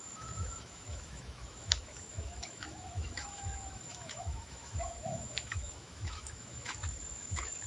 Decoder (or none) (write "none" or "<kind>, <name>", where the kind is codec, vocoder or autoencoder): autoencoder, DAC-VAE